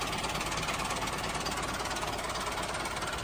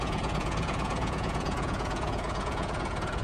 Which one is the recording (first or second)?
first